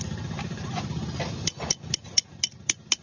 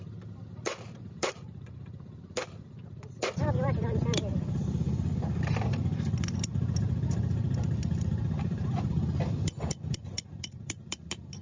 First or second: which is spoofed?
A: second